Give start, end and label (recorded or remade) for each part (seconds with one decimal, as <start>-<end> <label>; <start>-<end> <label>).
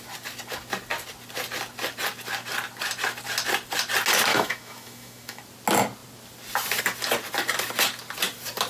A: 0.0-4.3 recorded; 4.3-5.4 remade; 5.4-8.7 recorded